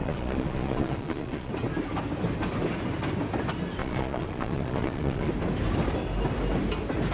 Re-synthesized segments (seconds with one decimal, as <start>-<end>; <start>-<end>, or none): 0.0-1.5; 3.8-5.3